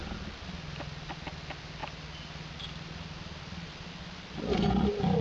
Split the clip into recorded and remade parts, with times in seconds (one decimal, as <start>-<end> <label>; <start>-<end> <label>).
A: 0.0-5.2 recorded